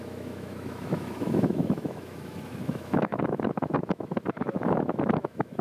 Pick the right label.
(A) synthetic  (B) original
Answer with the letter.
A